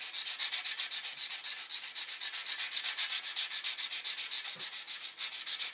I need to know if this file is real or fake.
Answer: real